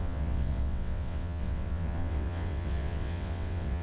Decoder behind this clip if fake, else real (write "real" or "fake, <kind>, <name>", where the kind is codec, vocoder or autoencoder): fake, vocoder, WaveNeXt